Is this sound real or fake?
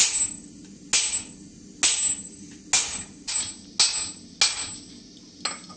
real